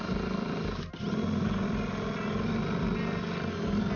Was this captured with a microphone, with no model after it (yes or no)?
yes